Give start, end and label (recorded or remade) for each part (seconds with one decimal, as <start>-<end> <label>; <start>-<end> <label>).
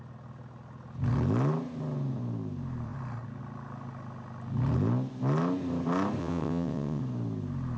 0.0-6.2 recorded; 6.2-7.0 remade; 7.0-7.8 recorded